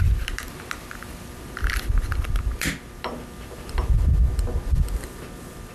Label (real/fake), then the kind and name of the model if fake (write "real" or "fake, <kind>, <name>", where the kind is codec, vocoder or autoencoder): fake, vocoder, BigVGAN v2